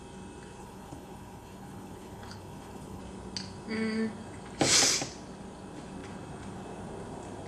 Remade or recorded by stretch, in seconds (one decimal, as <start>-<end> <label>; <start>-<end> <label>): 0.0-0.6 recorded; 0.6-3.0 remade; 3.0-7.5 recorded